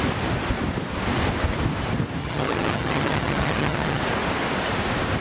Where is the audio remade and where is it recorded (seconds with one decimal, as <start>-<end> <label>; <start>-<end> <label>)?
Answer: 0.0-2.2 recorded; 2.2-4.0 remade; 4.0-5.2 recorded